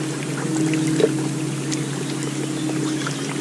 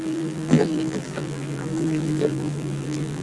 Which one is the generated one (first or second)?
second